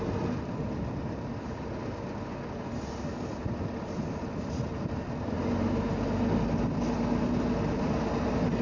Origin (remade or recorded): recorded